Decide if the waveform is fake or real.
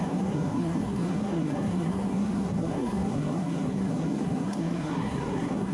fake